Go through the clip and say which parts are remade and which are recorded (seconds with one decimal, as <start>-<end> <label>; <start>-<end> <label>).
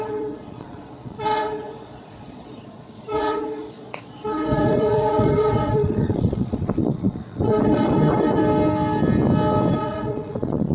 0.0-8.4 remade; 8.4-9.7 recorded; 9.7-10.7 remade